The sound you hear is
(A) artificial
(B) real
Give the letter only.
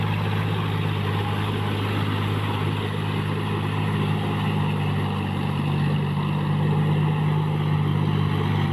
B